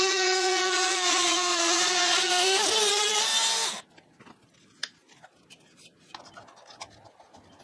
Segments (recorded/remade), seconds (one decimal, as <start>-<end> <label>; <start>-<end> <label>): 0.0-2.3 remade; 2.3-2.9 recorded; 2.9-3.3 remade; 3.3-7.6 recorded